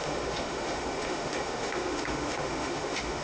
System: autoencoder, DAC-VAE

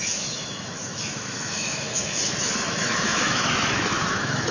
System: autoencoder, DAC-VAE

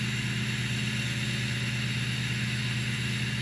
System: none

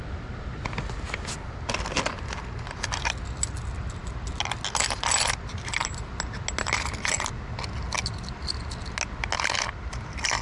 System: none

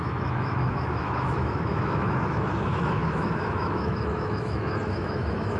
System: autoencoder, DAC-VAE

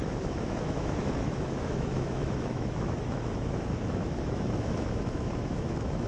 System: autoencoder, DAC-VAE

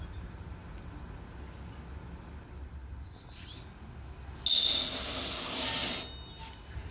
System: none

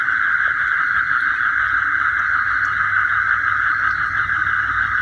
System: none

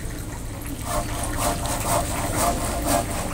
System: none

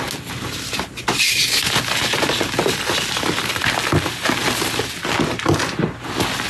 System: none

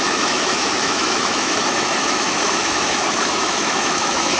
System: autoencoder, DAC-VAE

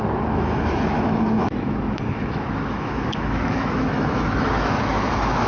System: autoencoder, DAC-VAE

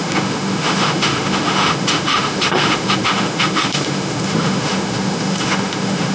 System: autoencoder, DAC-VAE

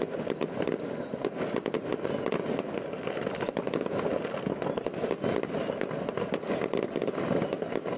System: none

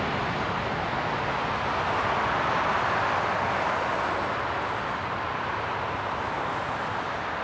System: none